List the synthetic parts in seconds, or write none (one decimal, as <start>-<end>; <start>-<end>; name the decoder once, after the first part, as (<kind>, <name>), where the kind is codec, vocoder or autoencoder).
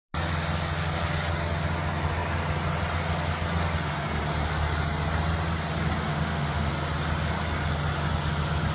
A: 6.1-6.7 (autoencoder, DAC-VAE)